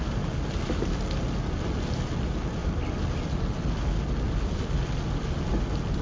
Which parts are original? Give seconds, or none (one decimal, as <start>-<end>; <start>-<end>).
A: 0.0-6.0